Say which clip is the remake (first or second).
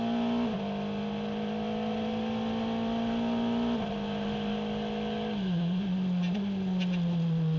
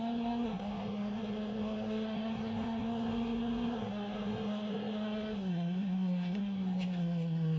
second